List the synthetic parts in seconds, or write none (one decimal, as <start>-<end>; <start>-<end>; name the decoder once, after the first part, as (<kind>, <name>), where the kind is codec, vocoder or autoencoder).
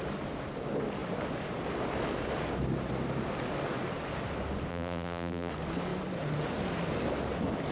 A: 4.7-5.5 (vocoder, BigVGAN v2)